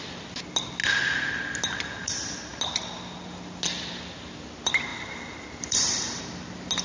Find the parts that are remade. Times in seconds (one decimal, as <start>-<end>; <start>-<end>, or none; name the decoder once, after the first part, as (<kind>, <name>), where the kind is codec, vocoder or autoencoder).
4.9-6.2 (vocoder, BigVGAN v2)